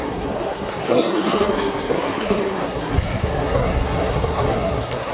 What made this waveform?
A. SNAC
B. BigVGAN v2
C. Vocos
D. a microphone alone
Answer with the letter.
A